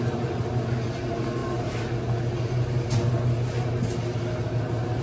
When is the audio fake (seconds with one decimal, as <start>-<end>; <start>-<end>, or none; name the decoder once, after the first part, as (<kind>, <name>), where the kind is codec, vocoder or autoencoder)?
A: none